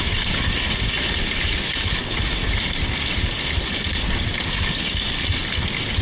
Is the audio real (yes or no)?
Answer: yes